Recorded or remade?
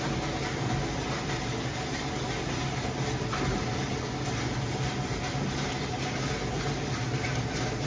recorded